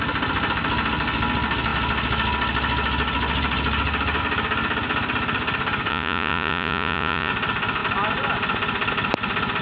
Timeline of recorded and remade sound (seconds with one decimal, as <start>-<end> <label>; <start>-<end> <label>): 0.0-5.9 recorded; 5.9-7.3 remade; 7.3-9.6 recorded